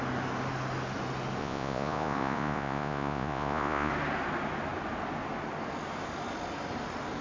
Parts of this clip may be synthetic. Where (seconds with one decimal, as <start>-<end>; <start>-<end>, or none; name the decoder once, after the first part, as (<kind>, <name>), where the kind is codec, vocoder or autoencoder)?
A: 1.4-3.9 (vocoder, Vocos)